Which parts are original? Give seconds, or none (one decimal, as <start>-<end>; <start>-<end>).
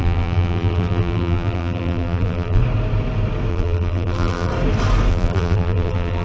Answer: 2.6-3.5; 4.5-5.1